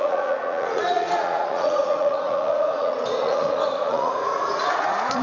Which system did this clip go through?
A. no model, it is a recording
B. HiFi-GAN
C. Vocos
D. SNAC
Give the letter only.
C